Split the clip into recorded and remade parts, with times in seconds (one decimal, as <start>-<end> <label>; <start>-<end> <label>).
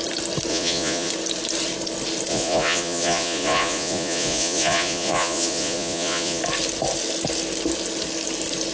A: 0.0-0.5 recorded; 0.5-1.1 remade; 1.1-2.3 recorded; 2.3-6.4 remade; 6.4-8.7 recorded